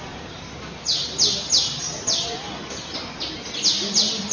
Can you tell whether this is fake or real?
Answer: real